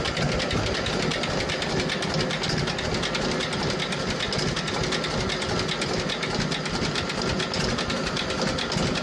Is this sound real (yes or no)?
yes